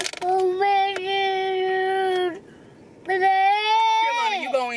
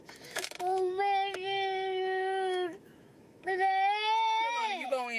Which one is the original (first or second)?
first